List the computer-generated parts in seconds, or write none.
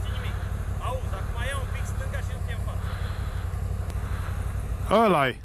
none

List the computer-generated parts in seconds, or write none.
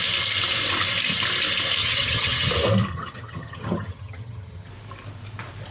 1.8-2.5 (vocoder, HiFi-GAN); 2.9-4.7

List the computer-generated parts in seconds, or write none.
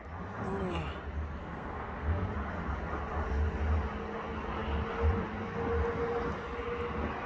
1.4-2.3 (codec, SNAC)